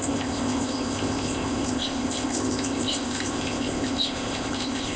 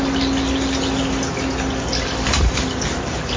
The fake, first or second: first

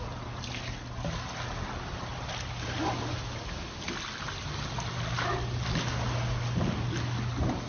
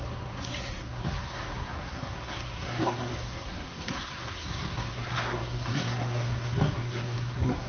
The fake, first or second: second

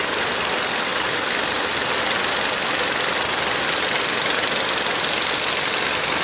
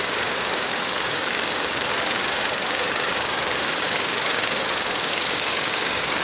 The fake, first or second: second